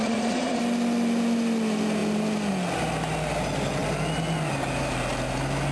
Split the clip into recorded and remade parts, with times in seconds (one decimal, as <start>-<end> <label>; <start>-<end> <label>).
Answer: 0.0-0.6 remade; 0.6-5.7 recorded

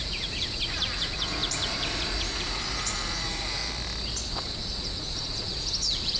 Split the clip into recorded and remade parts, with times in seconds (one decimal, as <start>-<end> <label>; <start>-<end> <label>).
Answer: 0.0-3.6 remade; 3.6-4.3 recorded; 4.3-6.2 remade

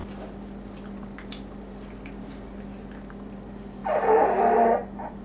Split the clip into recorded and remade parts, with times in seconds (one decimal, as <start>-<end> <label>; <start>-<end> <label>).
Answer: 0.0-5.2 recorded

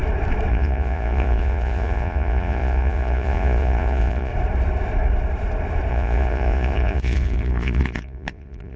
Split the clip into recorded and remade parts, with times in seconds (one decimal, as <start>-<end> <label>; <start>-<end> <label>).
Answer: 0.0-0.5 recorded; 0.5-4.3 remade; 4.3-5.9 recorded; 5.9-8.8 remade